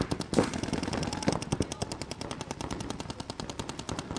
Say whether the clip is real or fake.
real